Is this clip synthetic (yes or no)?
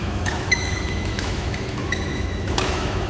yes